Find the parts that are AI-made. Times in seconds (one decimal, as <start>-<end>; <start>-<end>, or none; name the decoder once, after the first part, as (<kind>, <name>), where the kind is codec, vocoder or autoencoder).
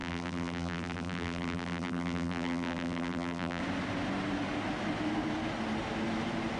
0.0-3.6 (vocoder, BigVGAN v2)